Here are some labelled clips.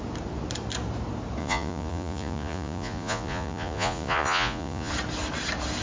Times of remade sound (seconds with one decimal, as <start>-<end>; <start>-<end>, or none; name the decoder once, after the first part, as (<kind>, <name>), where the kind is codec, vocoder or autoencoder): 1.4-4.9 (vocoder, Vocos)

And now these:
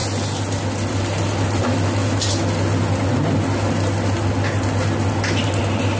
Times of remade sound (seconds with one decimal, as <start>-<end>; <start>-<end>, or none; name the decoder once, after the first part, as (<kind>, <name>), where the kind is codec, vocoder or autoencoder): none

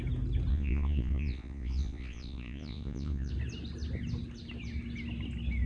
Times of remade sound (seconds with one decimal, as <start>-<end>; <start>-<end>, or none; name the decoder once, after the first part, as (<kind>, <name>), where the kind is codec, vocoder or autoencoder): 0.5-3.3 (vocoder, Vocos)

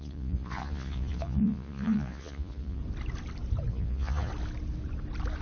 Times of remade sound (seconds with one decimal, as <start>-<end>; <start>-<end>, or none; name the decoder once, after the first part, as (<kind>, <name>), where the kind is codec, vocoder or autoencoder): 0.0-2.8 (vocoder, Vocos); 3.7-4.3

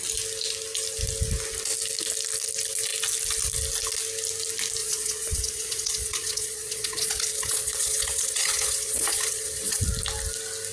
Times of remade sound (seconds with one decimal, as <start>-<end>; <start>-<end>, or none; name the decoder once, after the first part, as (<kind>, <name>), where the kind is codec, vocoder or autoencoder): 4.8-9.9 (vocoder, Vocos)

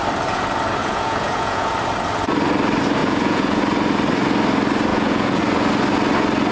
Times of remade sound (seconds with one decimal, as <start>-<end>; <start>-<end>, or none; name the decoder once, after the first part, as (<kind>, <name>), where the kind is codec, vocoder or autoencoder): 0.8-1.7 (vocoder, Vocos); 3.0-3.6; 4.9-5.4

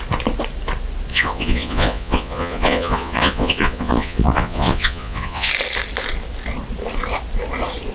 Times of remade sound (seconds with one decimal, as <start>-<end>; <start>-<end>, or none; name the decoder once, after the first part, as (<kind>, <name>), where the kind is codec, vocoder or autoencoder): 1.1-5.5 (vocoder, Vocos)